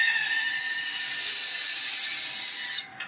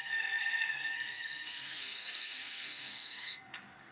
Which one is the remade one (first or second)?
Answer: second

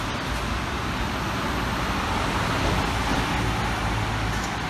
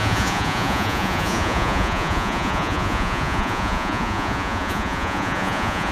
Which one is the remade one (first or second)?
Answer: second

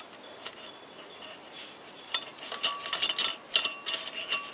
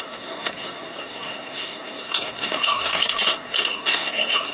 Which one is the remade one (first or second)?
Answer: second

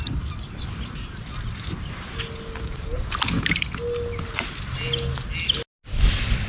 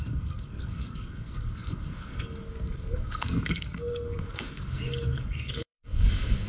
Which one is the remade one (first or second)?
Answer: second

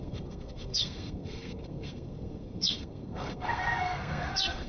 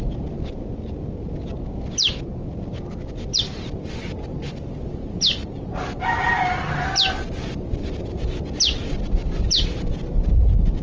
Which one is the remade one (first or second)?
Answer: first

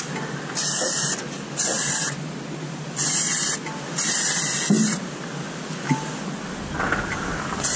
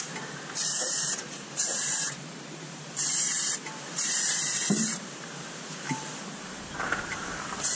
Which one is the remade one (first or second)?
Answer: second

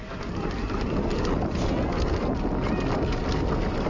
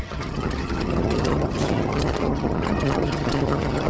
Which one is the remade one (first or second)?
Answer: second